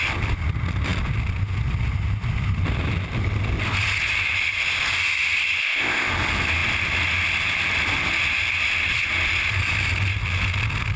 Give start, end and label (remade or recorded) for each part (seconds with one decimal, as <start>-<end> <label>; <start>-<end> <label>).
0.0-5.6 recorded; 5.6-6.1 remade; 6.1-11.0 recorded